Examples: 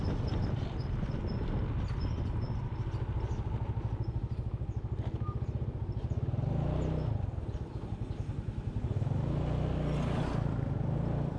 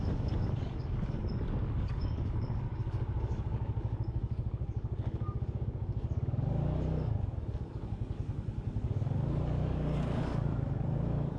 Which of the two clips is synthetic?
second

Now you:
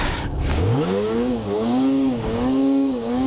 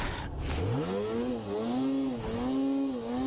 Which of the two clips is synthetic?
first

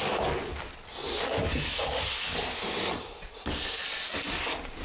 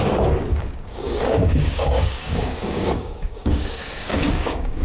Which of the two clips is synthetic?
second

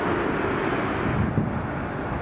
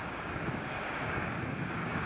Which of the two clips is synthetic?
second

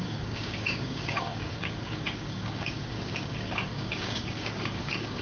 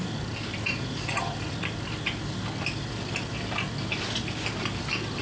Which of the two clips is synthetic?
first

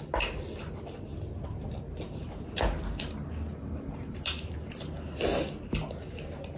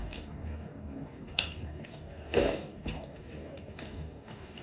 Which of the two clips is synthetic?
second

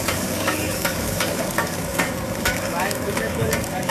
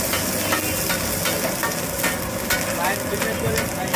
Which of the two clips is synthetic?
first